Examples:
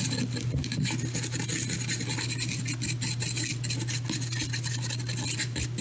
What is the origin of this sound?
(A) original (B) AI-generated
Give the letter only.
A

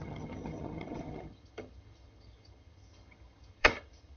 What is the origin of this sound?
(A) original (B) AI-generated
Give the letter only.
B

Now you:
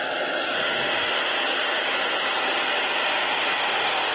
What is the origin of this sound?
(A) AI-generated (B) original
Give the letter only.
B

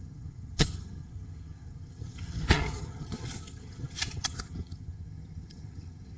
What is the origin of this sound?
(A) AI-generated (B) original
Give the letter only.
A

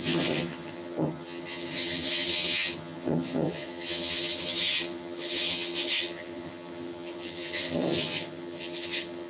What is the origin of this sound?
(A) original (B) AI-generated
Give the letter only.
B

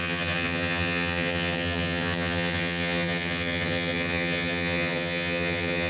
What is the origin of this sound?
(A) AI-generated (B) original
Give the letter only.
A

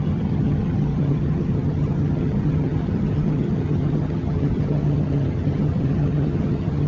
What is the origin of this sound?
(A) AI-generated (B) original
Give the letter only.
A